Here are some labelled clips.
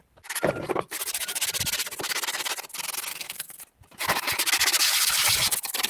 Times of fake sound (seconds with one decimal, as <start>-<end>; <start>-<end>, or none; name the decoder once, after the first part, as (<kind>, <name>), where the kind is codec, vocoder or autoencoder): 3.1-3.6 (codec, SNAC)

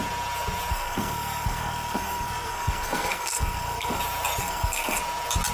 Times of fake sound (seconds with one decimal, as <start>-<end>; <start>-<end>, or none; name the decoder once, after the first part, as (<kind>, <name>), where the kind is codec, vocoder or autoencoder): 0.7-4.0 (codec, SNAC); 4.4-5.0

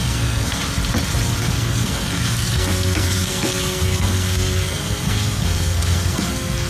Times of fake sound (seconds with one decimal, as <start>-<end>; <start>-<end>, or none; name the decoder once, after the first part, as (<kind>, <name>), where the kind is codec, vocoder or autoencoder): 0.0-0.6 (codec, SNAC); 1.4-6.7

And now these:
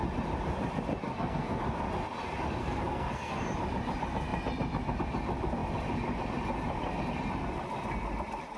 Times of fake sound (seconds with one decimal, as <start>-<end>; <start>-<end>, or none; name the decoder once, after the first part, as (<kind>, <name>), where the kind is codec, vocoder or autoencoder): 1.1-1.6 (codec, SNAC); 2.6-3.4